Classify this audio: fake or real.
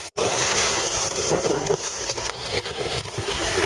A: fake